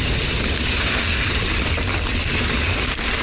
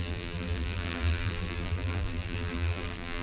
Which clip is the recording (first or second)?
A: first